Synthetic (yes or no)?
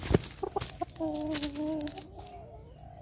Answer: no